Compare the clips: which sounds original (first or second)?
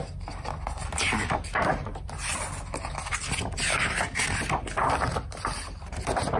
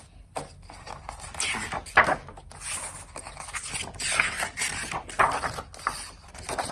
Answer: second